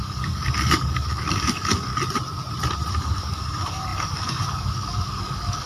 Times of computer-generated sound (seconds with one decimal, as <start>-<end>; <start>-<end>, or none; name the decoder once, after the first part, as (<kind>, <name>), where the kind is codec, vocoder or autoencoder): 0.0-1.9 (codec, DAC); 2.9-5.7